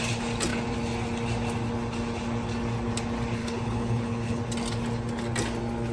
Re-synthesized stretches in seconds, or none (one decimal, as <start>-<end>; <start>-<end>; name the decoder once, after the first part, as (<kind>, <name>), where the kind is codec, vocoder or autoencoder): 3.4-4.4 (codec, HILCodec)